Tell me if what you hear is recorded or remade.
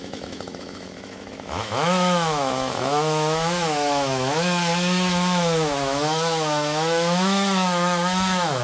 remade